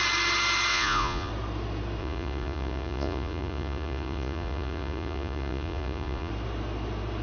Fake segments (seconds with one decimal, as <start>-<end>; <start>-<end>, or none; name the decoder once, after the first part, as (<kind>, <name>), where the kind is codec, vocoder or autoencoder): 0.7-1.3 (vocoder, Vocos); 2.0-6.3